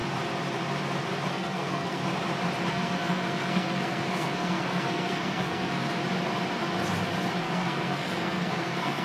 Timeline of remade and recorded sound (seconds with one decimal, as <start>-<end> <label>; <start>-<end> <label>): 0.0-1.3 recorded; 1.3-2.0 remade; 2.0-2.7 recorded; 2.7-6.0 remade; 6.0-7.4 recorded; 7.4-9.0 remade

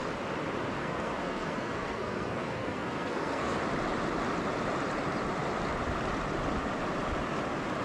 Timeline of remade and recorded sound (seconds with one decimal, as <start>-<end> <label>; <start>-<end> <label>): 0.0-0.8 recorded; 0.8-3.6 remade; 3.6-7.8 recorded

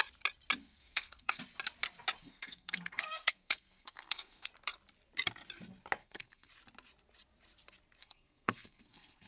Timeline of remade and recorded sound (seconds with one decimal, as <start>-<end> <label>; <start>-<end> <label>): 0.0-0.6 recorded; 0.6-1.4 remade; 1.4-2.2 recorded; 2.2-4.5 remade; 4.5-6.0 recorded; 6.0-6.5 remade; 6.5-8.0 recorded; 8.0-9.3 remade

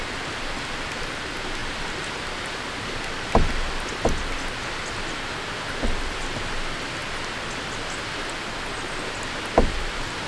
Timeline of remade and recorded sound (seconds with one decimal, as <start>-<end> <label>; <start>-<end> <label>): 0.0-10.3 recorded